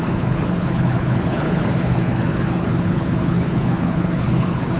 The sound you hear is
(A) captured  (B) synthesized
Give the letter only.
B